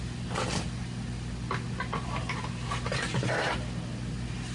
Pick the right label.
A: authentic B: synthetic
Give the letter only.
A